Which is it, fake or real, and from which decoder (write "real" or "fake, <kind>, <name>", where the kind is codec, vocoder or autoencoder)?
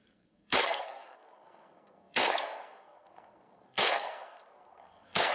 fake, codec, SNAC